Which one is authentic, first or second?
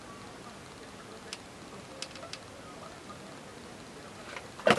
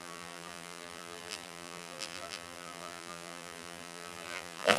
first